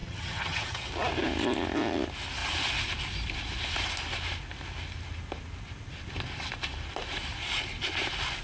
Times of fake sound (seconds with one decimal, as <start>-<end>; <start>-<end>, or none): 0.0-0.9